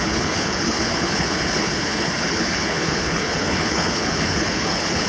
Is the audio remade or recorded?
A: remade